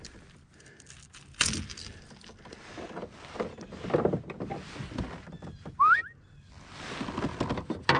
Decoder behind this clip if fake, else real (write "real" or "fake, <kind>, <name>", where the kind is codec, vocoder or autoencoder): real